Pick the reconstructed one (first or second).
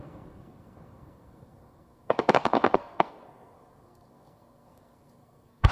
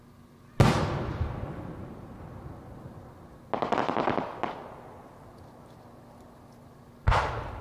first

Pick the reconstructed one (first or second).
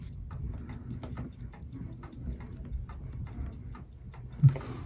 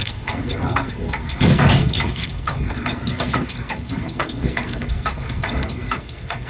second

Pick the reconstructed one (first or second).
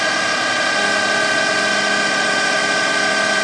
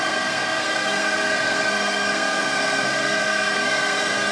second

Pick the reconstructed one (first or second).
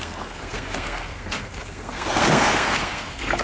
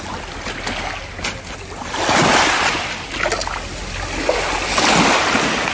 first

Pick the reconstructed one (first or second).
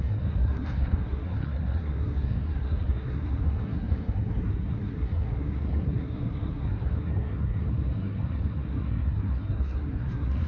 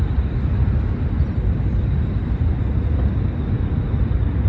first